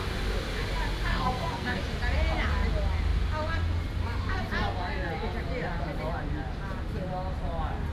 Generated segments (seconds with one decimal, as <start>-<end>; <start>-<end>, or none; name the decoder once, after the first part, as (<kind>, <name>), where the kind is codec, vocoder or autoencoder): 1.1-1.8 (codec, SNAC)

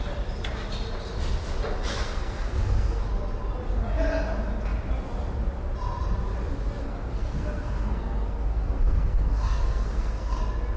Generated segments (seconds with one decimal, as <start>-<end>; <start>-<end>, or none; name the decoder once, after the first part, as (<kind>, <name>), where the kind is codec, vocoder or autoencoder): 1.9-3.0 (codec, SNAC); 6.8-10.4